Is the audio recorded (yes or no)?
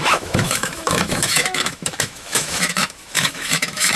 no